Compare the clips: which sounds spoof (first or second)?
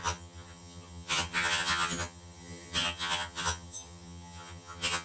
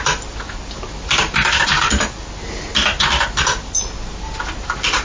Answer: first